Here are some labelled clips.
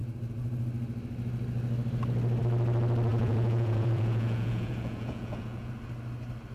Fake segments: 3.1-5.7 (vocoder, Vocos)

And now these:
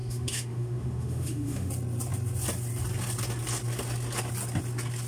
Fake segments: 0.0-1.7 (autoencoder, DAC-VAE)